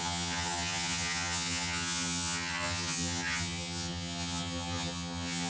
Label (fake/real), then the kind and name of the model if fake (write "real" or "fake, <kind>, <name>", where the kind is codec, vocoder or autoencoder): fake, vocoder, HiFi-GAN